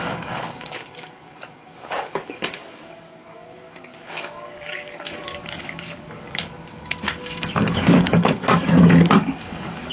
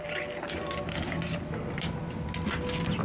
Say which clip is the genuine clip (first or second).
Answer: second